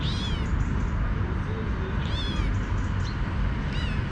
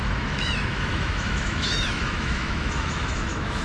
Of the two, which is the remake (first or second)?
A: second